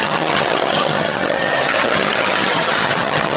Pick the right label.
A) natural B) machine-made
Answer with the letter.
B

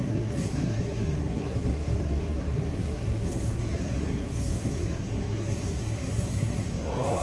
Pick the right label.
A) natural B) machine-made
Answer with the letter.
B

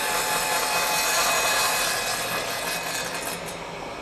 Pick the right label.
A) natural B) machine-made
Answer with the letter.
A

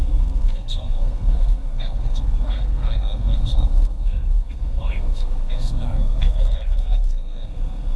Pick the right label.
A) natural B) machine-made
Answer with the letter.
B